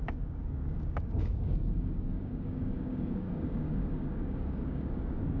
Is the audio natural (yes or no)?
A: no